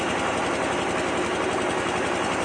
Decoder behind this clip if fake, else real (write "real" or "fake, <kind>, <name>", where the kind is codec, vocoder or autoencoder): real